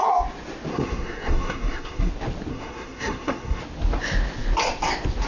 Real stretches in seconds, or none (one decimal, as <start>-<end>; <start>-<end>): 0.0-0.7; 2.1-2.5; 3.6-5.3